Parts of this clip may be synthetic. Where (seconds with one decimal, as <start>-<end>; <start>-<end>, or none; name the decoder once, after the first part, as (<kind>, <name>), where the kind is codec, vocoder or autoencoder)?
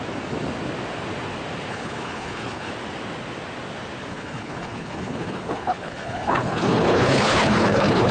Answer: 1.7-2.7 (codec, HILCodec); 4.1-8.1